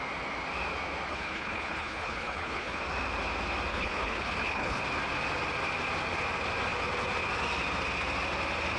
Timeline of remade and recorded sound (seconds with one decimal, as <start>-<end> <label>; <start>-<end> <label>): 0.0-1.1 recorded; 1.1-2.8 remade; 2.8-3.7 recorded; 3.7-4.8 remade; 4.8-8.8 recorded